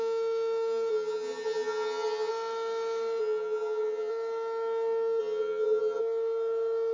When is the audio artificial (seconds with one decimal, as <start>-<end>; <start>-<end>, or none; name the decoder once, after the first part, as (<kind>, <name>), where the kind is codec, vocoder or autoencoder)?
0.9-2.3 (vocoder, HiFi-GAN); 3.2-4.1; 5.2-6.0